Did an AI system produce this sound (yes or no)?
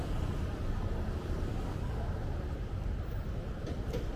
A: no